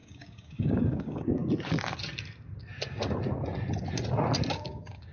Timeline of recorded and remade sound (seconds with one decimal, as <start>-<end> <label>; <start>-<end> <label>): 0.0-1.4 remade; 1.4-4.5 recorded; 4.5-5.1 remade